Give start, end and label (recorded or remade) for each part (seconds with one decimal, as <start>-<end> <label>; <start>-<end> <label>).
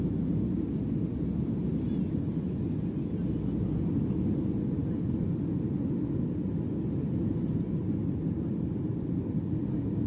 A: 0.0-10.1 recorded